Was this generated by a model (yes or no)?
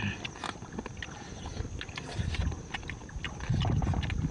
no